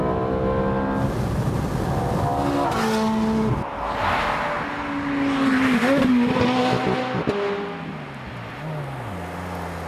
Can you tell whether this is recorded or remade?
recorded